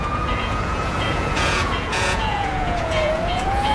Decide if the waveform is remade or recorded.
remade